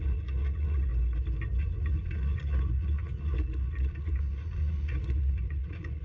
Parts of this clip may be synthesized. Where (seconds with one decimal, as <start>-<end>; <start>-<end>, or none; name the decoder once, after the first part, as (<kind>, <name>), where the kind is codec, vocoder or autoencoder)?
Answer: 0.0-0.9 (vocoder, Vocos); 1.6-6.0

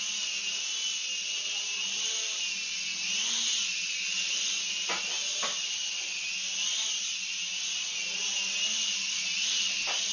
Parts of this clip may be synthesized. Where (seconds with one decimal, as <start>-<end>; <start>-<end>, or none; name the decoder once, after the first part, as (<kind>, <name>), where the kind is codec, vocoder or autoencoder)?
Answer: none

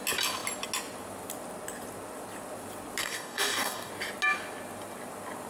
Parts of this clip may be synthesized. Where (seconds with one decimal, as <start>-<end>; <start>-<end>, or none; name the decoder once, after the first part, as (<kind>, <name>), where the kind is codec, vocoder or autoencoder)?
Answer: 3.0-3.9 (codec, DAC)

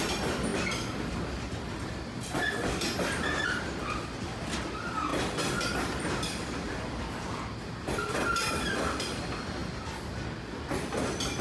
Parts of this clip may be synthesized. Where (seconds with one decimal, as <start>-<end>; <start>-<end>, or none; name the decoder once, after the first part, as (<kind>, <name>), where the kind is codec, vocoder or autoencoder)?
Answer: none

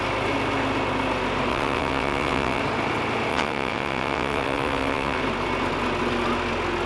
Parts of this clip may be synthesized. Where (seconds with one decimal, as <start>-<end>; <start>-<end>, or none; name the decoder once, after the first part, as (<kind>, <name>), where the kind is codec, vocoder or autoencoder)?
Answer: 1.5-2.6 (vocoder, WaveNeXt); 3.3-5.2

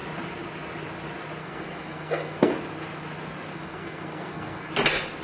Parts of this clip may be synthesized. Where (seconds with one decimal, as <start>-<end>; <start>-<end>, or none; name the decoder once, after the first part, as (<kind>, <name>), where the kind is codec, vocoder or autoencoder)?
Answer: 1.4-2.5 (codec, SNAC); 3.5-4.7

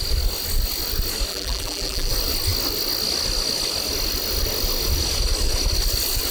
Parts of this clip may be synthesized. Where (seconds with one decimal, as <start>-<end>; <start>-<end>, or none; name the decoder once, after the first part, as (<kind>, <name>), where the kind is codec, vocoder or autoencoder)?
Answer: 1.3-2.1 (vocoder, BigVGAN v2)

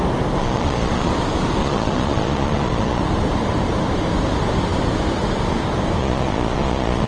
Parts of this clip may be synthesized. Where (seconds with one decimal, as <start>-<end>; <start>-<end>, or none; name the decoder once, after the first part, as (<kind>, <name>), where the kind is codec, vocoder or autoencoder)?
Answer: 0.4-1.1 (vocoder, Vocos); 1.6-3.0; 6.0-7.1